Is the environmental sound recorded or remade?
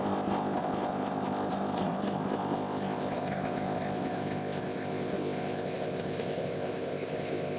remade